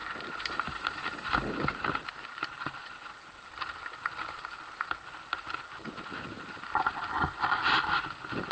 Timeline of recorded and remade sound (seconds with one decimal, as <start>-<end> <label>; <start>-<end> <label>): 0.0-8.5 recorded